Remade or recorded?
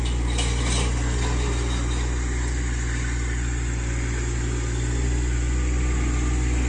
recorded